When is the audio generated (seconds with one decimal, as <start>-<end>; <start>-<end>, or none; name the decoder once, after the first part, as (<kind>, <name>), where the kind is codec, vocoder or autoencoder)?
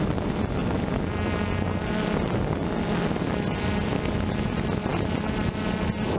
none